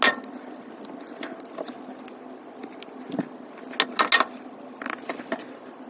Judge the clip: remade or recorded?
recorded